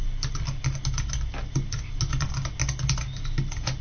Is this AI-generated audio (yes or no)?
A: no